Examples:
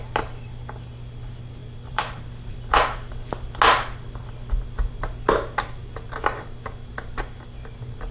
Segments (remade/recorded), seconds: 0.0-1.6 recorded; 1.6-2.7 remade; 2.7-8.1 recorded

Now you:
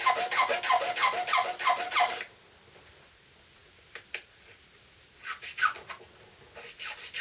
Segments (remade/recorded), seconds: 0.0-3.6 recorded; 3.6-5.8 remade; 5.8-7.2 recorded

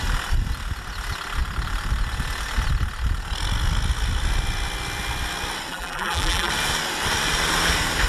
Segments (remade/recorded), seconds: 0.0-5.7 recorded; 5.7-6.5 remade; 6.5-8.1 recorded